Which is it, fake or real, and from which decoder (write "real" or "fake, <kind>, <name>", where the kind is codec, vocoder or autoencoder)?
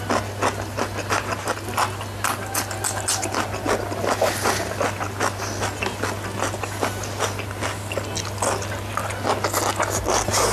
real